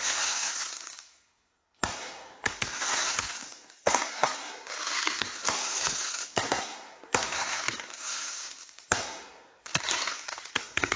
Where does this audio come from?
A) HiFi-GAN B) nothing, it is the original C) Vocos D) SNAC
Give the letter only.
D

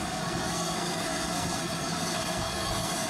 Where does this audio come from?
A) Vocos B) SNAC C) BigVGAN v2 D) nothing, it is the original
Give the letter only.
B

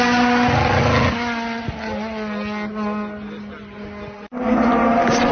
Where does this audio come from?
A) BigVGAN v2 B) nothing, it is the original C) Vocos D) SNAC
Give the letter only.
B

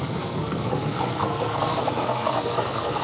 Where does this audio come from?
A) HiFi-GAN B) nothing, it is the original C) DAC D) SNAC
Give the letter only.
D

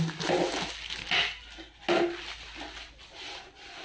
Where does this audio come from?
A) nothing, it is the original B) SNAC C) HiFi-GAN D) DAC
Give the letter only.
A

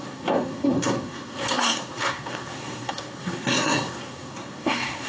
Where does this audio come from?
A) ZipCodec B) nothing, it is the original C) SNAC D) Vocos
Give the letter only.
C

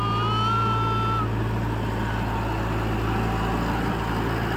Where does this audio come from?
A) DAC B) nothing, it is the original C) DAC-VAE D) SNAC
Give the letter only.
B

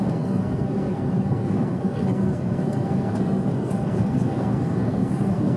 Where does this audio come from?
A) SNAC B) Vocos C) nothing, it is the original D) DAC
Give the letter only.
A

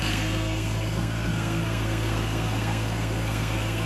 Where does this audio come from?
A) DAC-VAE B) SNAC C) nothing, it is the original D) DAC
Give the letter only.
B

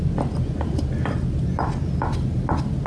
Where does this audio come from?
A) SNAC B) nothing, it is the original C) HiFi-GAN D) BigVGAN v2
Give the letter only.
B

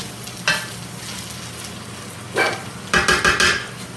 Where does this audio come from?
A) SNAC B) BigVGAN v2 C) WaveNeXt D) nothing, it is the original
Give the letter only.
D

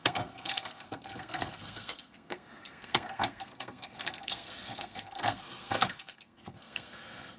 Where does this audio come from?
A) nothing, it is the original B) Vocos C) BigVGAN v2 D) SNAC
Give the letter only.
D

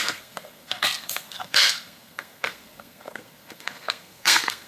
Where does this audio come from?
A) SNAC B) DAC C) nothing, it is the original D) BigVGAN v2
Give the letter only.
A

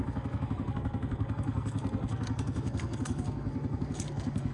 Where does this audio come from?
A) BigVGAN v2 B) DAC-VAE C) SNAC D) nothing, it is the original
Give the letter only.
C